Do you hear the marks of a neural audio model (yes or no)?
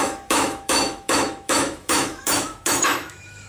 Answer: yes